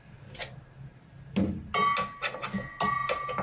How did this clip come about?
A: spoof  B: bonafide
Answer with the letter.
B